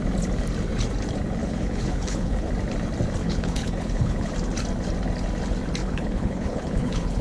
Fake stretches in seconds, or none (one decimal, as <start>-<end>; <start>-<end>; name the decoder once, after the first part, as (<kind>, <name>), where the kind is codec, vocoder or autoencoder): 1.4-2.5 (codec, HILCodec); 3.2-4.3; 5.8-7.2